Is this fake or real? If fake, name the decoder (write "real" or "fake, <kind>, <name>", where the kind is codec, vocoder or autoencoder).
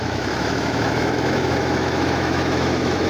fake, autoencoder, DAC-VAE